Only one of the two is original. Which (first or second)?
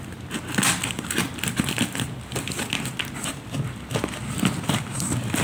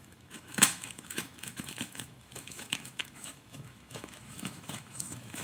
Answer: first